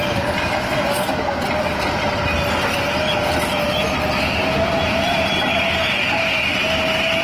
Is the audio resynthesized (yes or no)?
no